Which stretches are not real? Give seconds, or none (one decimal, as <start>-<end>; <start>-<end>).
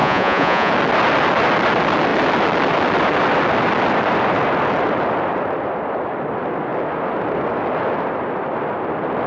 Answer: 0.0-0.7